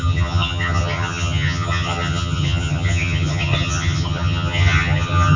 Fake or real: fake